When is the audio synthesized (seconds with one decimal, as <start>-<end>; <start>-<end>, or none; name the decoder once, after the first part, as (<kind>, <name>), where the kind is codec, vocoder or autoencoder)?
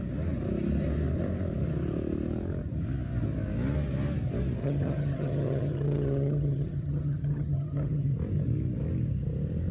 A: 4.6-8.1 (vocoder, HiFi-GAN)